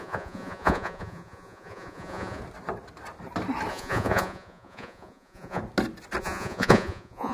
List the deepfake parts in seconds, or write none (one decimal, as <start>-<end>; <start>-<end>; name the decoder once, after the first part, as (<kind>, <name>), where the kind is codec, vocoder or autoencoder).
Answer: 0.0-2.4 (vocoder, Vocos); 3.7-5.6; 6.2-7.3